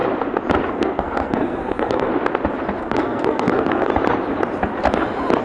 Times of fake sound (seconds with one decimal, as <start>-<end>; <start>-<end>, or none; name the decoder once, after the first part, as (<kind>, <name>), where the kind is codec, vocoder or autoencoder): 0.7-2.1 (codec, SNAC); 2.8-3.9